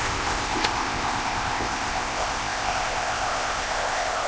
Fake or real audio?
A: fake